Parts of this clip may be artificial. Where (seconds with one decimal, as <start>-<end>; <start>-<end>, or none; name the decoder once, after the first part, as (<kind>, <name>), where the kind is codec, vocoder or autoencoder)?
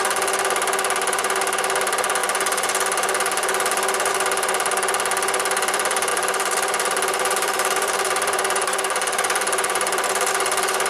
6.1-10.3 (vocoder, BigVGAN v2)